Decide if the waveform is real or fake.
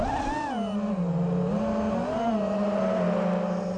real